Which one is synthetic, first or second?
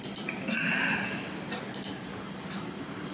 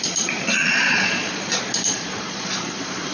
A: second